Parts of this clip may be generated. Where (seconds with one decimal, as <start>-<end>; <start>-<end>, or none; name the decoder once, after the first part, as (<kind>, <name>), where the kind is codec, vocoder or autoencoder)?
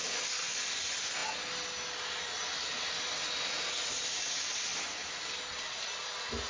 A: none